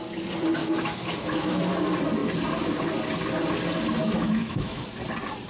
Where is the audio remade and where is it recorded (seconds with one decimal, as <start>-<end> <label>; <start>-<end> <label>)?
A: 0.0-0.6 recorded; 0.6-1.6 remade; 1.6-4.0 recorded; 4.0-4.9 remade; 4.9-5.5 recorded